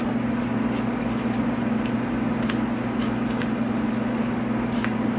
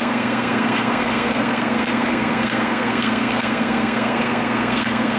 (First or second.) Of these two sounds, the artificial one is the second